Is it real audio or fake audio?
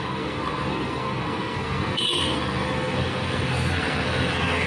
fake